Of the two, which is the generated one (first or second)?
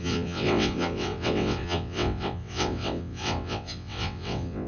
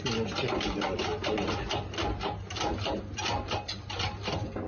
first